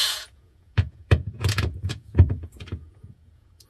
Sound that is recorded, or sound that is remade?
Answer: remade